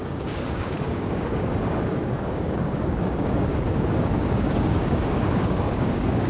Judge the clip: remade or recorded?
remade